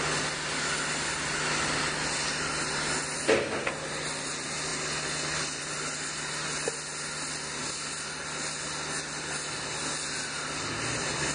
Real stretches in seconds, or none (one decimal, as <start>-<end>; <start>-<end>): 0.0-11.3